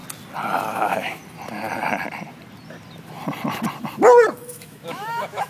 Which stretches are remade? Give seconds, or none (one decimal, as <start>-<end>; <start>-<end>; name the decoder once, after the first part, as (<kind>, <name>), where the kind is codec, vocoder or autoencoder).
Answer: 0.7-1.2 (autoencoder, DAC-VAE); 4.3-5.5